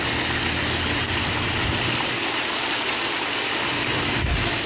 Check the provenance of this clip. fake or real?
real